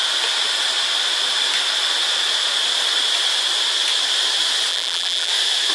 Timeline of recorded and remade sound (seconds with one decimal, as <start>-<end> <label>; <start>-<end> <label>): 0.0-4.7 recorded; 4.7-5.3 remade; 5.3-5.7 recorded